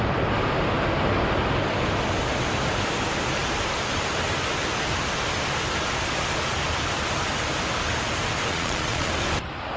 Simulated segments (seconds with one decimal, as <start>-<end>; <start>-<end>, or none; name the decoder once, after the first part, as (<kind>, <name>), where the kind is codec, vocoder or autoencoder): 8.5-9.1 (vocoder, Vocos)